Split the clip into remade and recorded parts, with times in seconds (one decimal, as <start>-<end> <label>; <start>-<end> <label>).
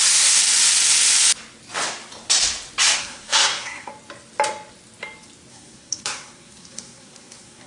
0.0-0.4 remade; 0.4-3.0 recorded; 3.0-3.9 remade; 3.9-5.5 recorded; 5.5-7.7 remade